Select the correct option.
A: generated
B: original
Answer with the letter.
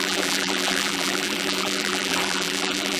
A